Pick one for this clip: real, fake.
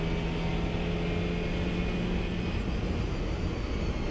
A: real